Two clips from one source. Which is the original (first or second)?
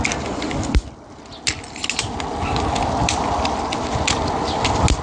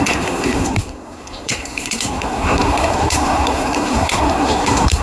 first